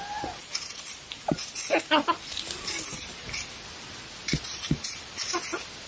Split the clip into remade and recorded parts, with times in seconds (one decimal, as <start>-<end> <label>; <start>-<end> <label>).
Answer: 0.0-5.9 recorded